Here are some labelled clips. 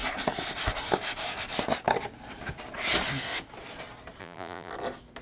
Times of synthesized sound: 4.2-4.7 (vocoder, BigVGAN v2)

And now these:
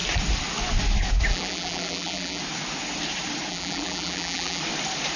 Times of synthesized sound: 1.3-2.4 (vocoder, BigVGAN v2); 3.5-4.6

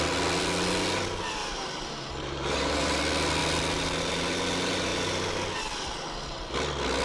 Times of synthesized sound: 1.4-3.0 (vocoder, BigVGAN v2)

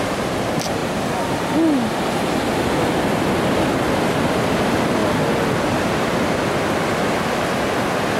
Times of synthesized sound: 0.0-0.8 (vocoder, BigVGAN v2); 3.8-5.0

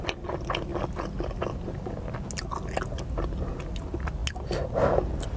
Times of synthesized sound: none